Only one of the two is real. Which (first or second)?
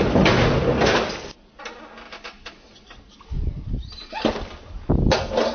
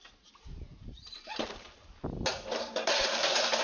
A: first